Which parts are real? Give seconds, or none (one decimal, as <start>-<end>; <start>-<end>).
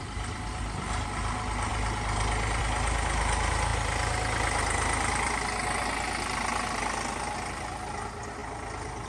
0.0-9.1